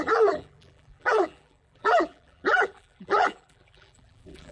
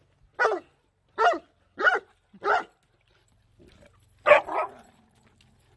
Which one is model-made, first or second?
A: first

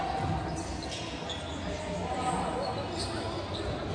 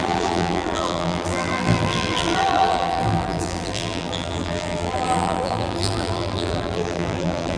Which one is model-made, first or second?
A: second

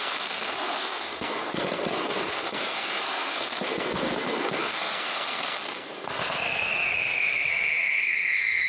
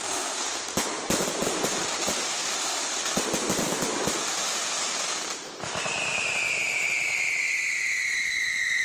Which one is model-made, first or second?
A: first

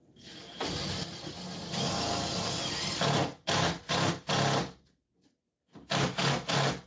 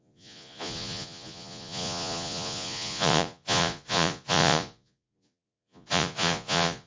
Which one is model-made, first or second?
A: second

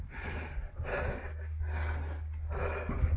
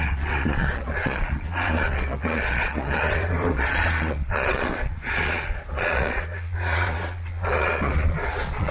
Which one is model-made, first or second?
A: second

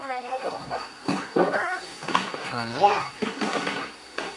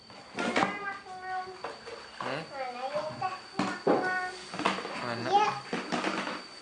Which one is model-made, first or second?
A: first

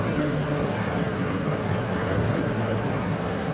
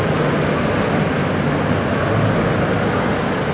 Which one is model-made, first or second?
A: first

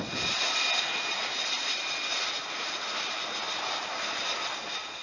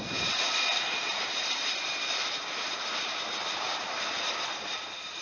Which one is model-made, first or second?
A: second